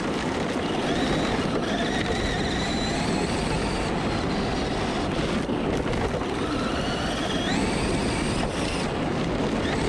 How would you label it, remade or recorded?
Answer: recorded